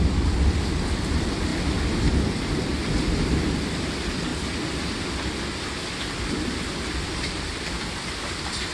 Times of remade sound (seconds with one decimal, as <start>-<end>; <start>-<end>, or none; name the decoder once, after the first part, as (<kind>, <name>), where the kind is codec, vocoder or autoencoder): 0.0-1.5 (vocoder, BigVGAN v2); 2.5-4.3; 6.3-8.7